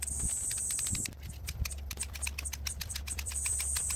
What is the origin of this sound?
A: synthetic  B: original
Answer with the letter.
A